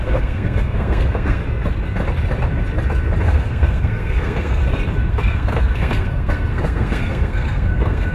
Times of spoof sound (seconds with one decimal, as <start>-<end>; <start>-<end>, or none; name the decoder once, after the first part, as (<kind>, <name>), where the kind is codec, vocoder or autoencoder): 0.0-1.4 (codec, SNAC); 3.2-4.6; 5.1-8.1